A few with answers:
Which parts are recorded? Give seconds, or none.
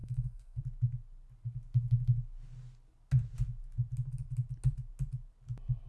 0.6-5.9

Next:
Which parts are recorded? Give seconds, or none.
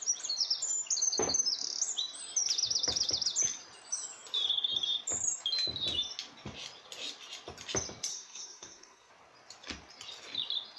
0.0-8.1; 9.1-10.8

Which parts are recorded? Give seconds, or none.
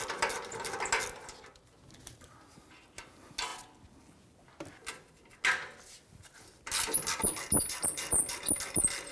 0.0-7.6; 8.4-9.1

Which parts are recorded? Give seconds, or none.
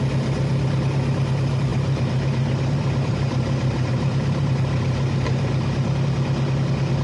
0.0-1.7; 5.5-7.0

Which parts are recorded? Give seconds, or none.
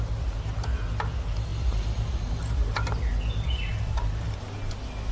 0.0-5.1